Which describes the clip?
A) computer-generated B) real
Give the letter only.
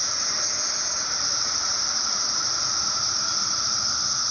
B